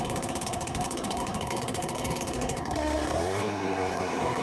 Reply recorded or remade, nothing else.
remade